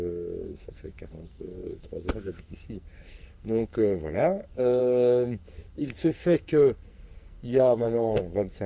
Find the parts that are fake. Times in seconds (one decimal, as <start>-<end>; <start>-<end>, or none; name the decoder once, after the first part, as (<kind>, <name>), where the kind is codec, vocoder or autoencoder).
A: 0.0-8.7 (codec, SNAC)